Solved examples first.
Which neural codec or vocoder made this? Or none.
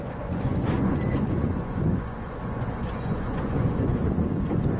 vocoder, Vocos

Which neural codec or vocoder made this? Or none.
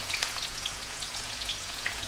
vocoder, Vocos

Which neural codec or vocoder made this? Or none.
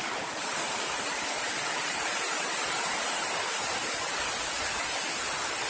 none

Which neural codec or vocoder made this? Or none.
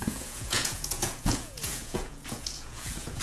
vocoder, Vocos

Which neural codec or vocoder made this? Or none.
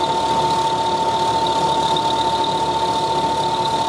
none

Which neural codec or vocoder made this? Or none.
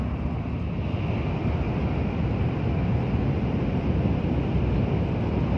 none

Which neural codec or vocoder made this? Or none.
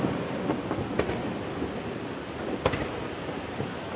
none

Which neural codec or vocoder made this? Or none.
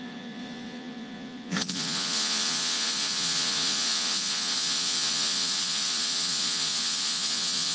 vocoder, Vocos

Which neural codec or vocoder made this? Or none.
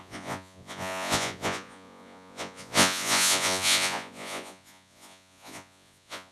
vocoder, Vocos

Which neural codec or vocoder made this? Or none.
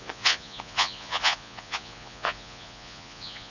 vocoder, Vocos